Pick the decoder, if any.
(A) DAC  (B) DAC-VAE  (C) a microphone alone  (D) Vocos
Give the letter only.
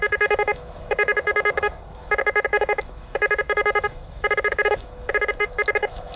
B